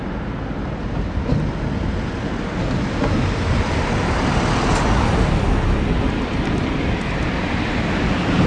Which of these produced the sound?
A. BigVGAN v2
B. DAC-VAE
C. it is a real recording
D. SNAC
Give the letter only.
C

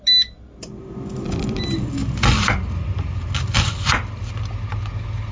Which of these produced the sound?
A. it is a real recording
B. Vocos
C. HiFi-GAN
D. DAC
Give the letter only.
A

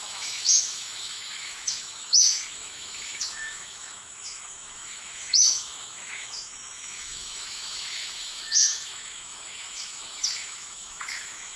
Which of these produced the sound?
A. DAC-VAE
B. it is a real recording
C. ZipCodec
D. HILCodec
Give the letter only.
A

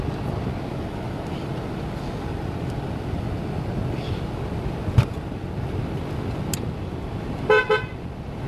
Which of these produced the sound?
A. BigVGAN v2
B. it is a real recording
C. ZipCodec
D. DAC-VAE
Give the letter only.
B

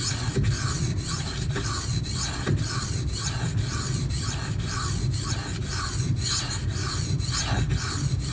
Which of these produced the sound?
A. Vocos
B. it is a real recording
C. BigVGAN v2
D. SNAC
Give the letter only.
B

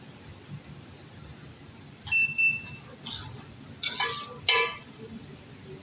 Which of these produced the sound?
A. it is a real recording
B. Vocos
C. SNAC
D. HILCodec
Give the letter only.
A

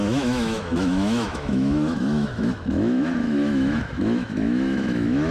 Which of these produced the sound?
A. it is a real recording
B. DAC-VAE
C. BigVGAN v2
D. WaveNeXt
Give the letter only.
B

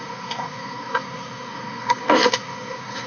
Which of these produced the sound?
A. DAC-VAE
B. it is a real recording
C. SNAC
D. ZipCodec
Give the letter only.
C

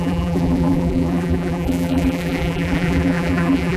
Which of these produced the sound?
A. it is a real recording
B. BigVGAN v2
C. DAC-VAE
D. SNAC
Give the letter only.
B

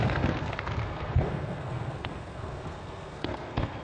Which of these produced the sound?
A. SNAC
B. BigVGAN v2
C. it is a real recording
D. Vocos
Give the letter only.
A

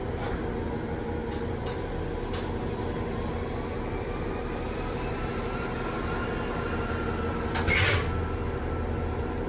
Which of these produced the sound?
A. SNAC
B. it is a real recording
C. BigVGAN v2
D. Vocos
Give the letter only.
B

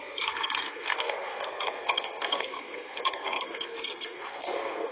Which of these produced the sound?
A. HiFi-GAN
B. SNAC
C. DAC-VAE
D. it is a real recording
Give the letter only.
B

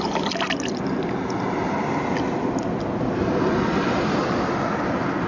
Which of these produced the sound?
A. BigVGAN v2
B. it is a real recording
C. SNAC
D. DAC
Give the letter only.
B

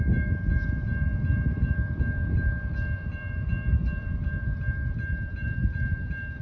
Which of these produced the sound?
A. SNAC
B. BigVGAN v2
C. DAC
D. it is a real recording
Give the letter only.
B